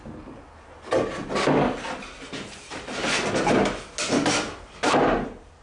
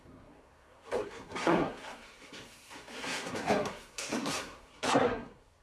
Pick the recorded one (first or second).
first